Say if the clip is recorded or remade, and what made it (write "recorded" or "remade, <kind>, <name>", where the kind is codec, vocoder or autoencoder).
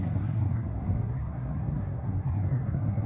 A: remade, codec, SNAC